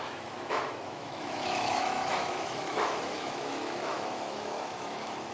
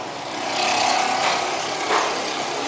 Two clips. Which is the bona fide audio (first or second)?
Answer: second